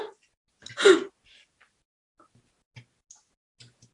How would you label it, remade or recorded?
recorded